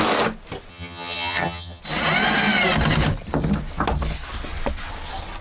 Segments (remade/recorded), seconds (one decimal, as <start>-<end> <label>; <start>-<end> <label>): 0.0-0.7 recorded; 0.7-1.8 remade; 1.8-5.4 recorded